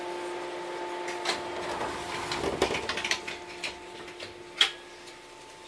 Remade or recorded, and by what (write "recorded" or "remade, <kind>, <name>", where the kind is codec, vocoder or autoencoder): recorded